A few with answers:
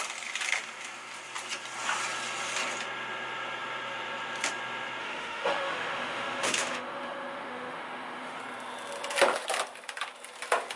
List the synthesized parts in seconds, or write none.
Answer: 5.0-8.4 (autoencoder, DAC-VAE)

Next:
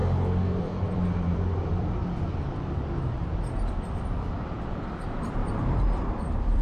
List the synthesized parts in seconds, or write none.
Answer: 0.6-6.6 (vocoder, BigVGAN v2)

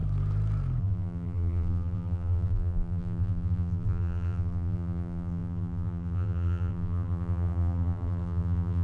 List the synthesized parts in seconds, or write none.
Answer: 0.8-8.8 (vocoder, BigVGAN v2)

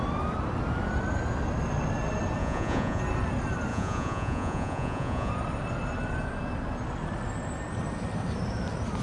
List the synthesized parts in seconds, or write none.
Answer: 2.4-3.0 (vocoder, Vocos); 3.7-5.3

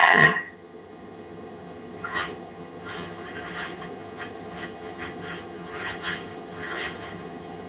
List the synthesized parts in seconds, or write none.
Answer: 0.0-7.7 (vocoder, HiFi-GAN)